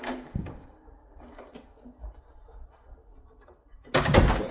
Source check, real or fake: real